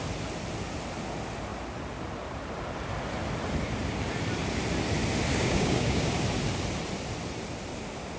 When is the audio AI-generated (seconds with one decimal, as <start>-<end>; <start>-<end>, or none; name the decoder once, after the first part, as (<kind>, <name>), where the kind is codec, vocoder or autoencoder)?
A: 5.3-6.1 (codec, DAC)